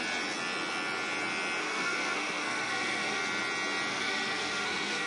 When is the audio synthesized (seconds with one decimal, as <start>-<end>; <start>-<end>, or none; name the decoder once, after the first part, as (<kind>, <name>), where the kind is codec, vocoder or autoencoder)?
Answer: 1.6-3.2 (codec, SNAC); 3.9-5.1